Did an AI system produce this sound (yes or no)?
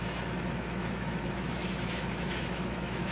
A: yes